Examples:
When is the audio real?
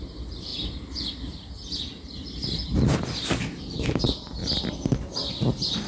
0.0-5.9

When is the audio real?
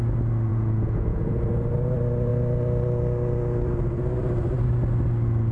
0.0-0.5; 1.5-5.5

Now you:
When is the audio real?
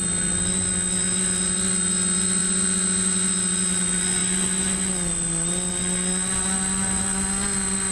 0.0-7.9